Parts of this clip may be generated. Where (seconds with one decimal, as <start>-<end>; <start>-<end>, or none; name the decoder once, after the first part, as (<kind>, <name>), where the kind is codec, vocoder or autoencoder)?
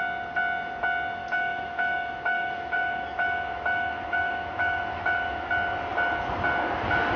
1.2-5.5 (autoencoder, DAC-VAE)